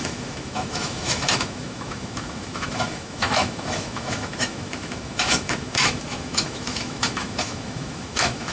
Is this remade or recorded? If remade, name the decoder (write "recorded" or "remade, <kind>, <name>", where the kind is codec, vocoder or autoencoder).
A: remade, autoencoder, DAC-VAE